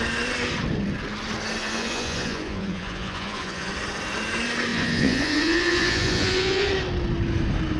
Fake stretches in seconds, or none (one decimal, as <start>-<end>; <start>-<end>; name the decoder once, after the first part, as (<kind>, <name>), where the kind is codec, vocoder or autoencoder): 1.6-3.7 (vocoder, Vocos); 4.7-6.7